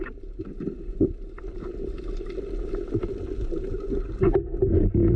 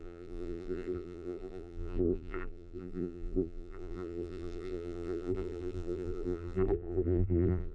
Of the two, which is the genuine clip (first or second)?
first